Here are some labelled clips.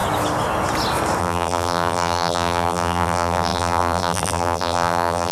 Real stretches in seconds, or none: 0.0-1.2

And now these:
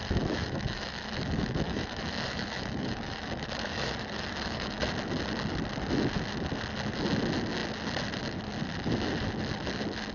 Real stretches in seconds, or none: 4.9-10.1

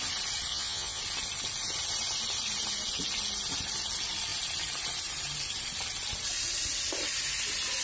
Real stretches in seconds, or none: 0.0-0.5; 1.0-7.8

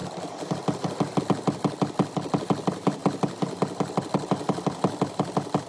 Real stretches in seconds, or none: 0.0-5.7

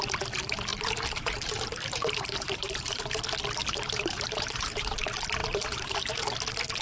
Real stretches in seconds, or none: 0.0-0.7; 3.2-3.6; 5.0-5.4; 6.2-6.8

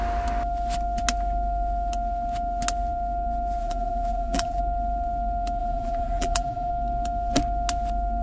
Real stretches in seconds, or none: 0.0-3.6; 4.6-5.6; 6.7-8.2